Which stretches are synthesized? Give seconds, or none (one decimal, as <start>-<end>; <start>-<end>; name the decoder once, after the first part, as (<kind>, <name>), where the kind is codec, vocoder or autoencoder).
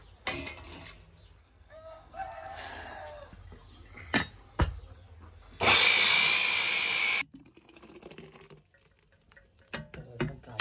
1.4-2.7 (codec, SNAC)